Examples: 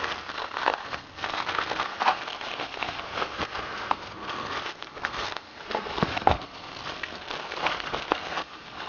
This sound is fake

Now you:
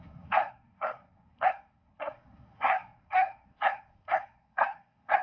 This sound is fake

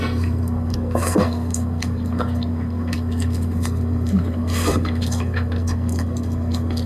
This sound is fake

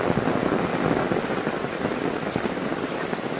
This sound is real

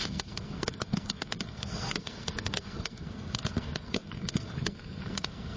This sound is fake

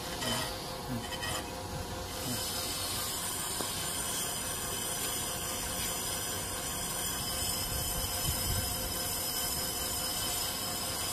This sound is real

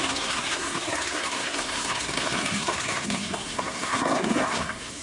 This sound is fake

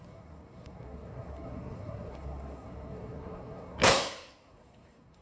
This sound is fake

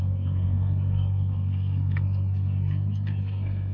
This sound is fake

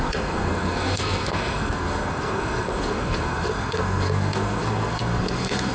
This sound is fake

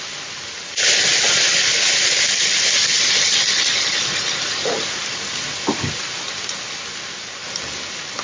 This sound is real